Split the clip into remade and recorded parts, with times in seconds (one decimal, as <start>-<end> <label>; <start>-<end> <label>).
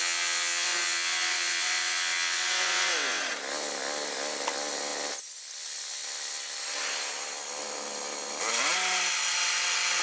0.0-3.2 remade; 3.2-10.0 recorded